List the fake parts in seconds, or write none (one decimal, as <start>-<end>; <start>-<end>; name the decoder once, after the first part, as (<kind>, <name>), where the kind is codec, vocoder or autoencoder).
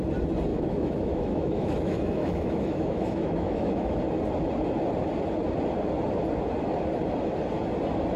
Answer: 0.5-4.0 (autoencoder, DAC-VAE)